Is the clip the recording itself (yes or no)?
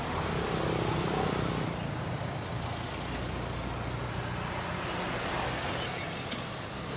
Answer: yes